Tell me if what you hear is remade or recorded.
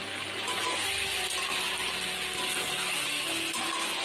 recorded